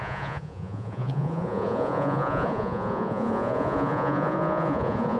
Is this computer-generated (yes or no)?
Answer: yes